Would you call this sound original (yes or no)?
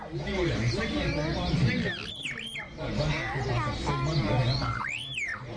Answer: yes